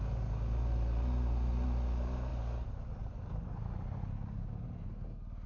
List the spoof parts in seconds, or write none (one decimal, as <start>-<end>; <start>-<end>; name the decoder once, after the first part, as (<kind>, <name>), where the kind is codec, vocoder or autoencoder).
none